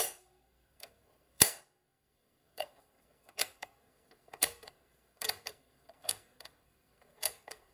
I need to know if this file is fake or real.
fake